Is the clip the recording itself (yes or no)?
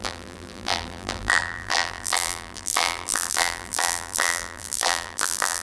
no